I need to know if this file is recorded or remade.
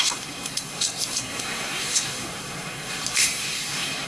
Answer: remade